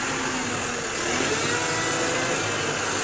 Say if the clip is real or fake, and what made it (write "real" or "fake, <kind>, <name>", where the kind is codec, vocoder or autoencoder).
real